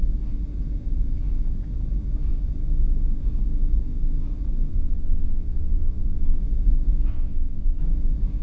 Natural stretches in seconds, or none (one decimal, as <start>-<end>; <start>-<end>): 0.0-4.7; 6.4-7.1; 7.8-8.4